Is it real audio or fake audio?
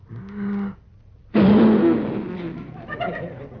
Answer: real